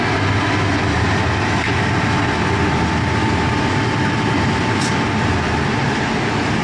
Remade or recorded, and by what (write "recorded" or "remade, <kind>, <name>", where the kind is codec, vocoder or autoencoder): recorded